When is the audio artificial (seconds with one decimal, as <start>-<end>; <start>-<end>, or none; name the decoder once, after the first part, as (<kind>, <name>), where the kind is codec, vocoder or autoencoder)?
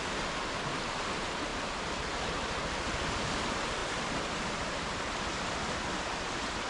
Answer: 3.8-6.7 (vocoder, BigVGAN v2)